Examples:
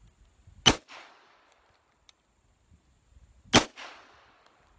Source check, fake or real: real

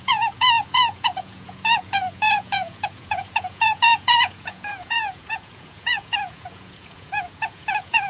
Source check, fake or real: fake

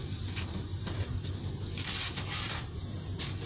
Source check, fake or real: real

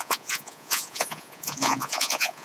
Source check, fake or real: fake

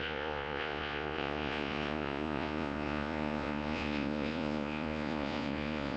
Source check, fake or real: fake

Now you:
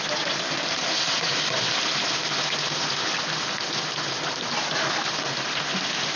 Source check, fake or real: real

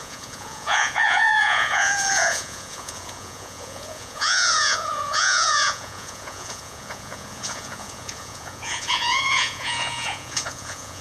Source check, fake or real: fake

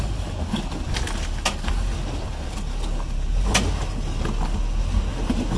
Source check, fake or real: real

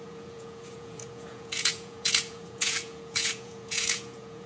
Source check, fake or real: fake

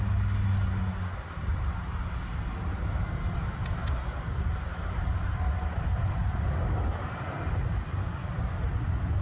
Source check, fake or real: real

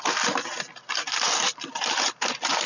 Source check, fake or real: real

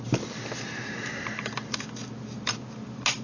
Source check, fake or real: real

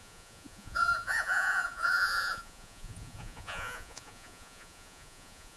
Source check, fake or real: fake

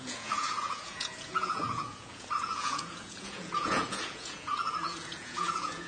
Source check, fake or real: fake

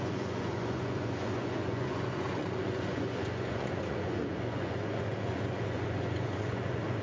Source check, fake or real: fake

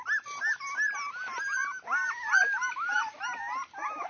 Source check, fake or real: real